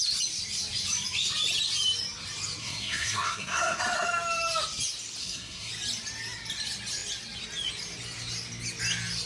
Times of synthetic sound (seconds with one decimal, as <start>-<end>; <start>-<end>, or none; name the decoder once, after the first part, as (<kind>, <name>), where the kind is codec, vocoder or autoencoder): 2.6-3.8 (codec, SNAC); 5.2-5.7